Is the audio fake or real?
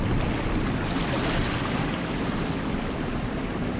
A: real